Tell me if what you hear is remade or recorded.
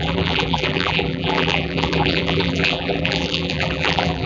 remade